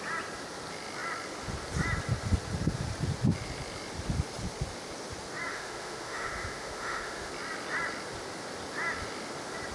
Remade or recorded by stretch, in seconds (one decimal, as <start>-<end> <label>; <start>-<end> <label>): 0.0-5.5 recorded; 5.5-7.3 remade; 7.3-9.7 recorded